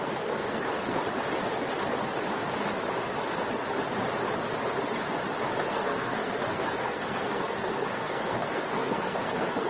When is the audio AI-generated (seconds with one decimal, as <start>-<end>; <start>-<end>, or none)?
0.0-1.0; 5.7-9.7